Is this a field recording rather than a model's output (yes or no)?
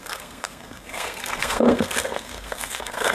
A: no